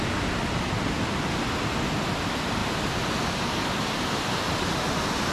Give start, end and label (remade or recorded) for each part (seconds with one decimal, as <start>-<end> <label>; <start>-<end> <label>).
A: 0.0-5.3 recorded

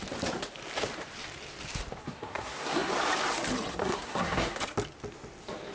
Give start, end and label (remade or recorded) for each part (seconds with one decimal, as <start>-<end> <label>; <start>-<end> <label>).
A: 0.0-2.0 recorded; 2.0-2.9 remade; 2.9-3.8 recorded; 3.8-4.6 remade; 4.6-5.7 recorded

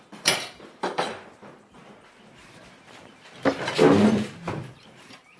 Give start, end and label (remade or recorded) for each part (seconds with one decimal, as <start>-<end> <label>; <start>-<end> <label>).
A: 0.0-1.8 remade; 1.8-4.6 recorded; 4.6-5.4 remade

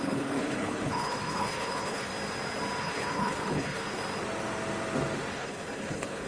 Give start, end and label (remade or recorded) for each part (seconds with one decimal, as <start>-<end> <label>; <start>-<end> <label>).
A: 0.0-2.1 remade; 2.1-2.8 recorded; 2.8-4.0 remade; 4.0-5.3 recorded; 5.3-6.3 remade

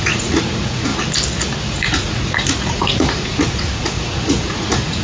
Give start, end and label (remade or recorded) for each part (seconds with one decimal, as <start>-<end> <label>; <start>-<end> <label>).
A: 0.0-0.9 remade; 0.9-1.7 recorded; 1.7-5.0 remade

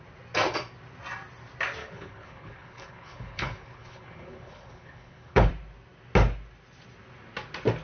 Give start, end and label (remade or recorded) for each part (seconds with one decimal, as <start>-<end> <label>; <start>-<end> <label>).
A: 0.0-1.8 recorded; 1.8-5.5 remade; 5.5-7.8 recorded